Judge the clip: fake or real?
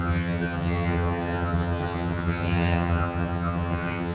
fake